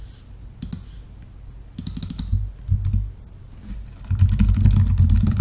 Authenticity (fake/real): real